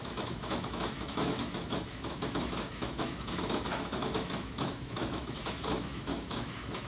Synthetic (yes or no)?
yes